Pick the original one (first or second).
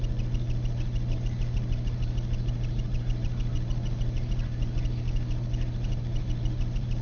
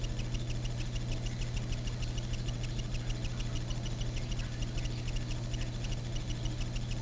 second